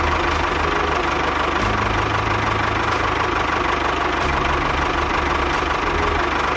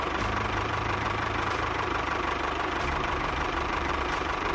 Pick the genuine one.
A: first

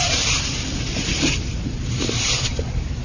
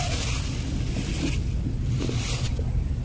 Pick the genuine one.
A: second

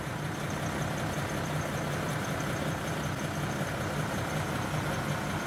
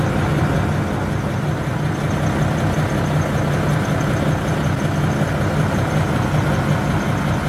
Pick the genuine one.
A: second